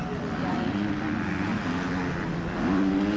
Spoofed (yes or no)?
no